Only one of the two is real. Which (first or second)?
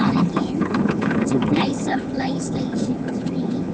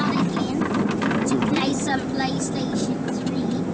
second